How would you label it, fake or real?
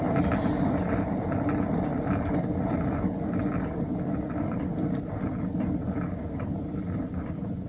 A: fake